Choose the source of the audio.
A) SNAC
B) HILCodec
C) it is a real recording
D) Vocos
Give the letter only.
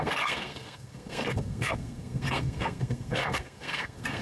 A